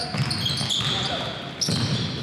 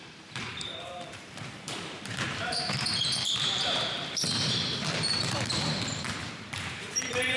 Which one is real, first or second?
first